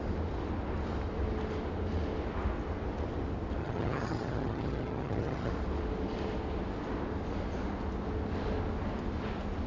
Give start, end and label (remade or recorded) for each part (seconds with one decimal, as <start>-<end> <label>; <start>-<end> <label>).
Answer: 0.0-3.6 recorded; 3.6-5.5 remade; 5.5-9.7 recorded